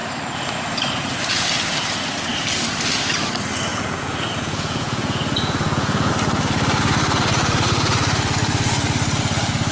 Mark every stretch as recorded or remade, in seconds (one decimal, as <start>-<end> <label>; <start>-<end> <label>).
0.0-3.7 recorded; 3.7-6.1 remade; 6.1-9.7 recorded

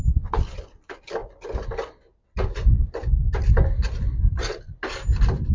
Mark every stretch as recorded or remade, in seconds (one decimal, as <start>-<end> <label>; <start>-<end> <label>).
0.0-5.5 recorded

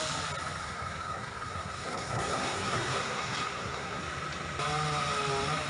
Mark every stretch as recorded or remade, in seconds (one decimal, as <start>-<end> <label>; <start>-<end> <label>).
0.0-0.6 recorded; 0.6-4.0 remade; 4.0-5.7 recorded

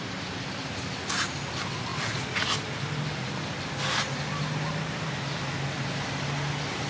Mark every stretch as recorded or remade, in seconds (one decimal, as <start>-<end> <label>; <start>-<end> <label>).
0.0-6.9 recorded

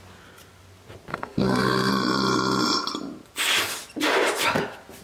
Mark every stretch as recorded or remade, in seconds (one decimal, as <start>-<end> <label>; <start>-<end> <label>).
0.0-1.1 recorded; 1.1-1.9 remade; 1.9-5.0 recorded

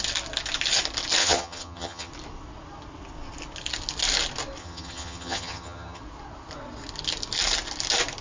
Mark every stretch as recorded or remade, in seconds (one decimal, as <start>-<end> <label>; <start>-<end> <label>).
0.0-1.2 recorded; 1.2-2.1 remade; 2.1-4.6 recorded; 4.6-6.0 remade; 6.0-8.2 recorded

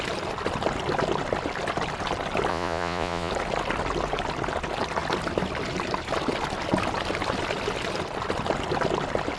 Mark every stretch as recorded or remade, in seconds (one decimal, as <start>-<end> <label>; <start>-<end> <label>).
0.0-2.5 recorded; 2.5-3.3 remade; 3.3-9.4 recorded